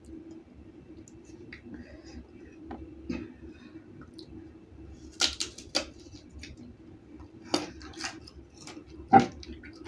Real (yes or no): yes